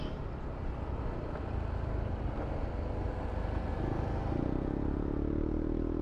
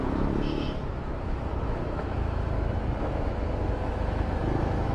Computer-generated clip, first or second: second